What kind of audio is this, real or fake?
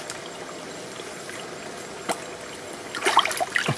real